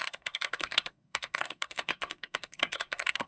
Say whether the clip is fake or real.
fake